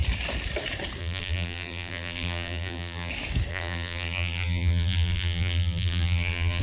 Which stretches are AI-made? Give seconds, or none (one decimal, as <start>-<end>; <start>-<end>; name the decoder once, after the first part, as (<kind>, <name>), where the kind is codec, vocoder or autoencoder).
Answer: 1.0-3.1 (vocoder, BigVGAN v2); 3.5-6.6